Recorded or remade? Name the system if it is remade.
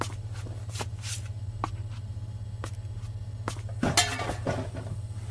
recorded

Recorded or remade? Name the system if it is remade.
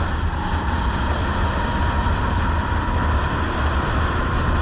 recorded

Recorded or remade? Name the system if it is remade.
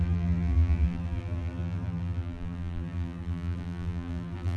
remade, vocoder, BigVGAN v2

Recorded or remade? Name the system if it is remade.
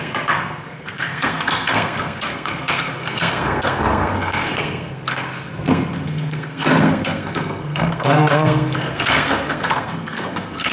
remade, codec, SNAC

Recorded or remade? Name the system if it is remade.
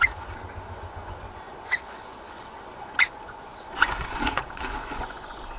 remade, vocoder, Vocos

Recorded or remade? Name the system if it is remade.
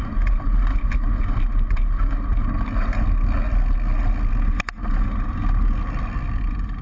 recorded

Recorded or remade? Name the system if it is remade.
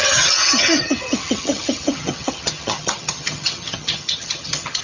remade, vocoder, HiFi-GAN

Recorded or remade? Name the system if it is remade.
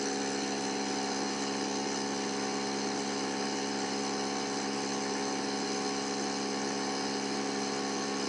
recorded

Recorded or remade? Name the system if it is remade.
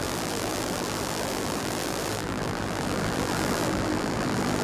remade, vocoder, BigVGAN v2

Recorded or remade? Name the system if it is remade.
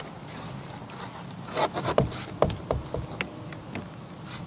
recorded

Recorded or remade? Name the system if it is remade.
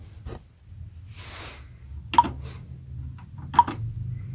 recorded